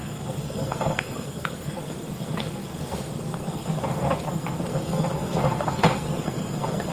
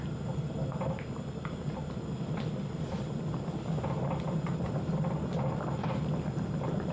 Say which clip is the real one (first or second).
second